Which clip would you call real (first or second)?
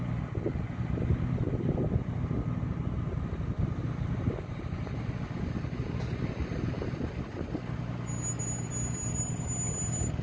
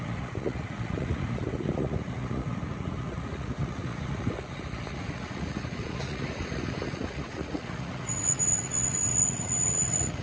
first